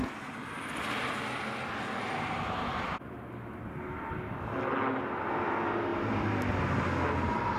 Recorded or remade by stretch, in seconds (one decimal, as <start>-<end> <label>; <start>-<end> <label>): 0.0-7.6 recorded